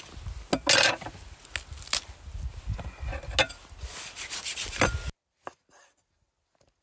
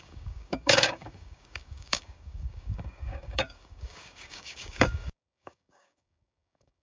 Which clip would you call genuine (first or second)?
first